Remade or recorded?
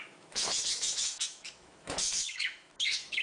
remade